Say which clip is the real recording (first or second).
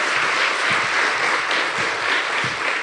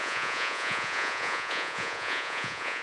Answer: first